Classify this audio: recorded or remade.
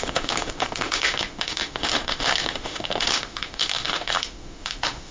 remade